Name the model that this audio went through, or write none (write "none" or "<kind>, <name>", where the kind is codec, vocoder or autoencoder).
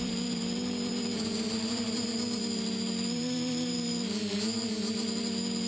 vocoder, BigVGAN v2